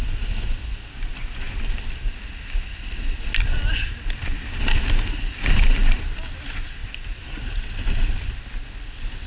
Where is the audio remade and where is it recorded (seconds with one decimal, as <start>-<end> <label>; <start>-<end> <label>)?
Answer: 0.0-9.3 recorded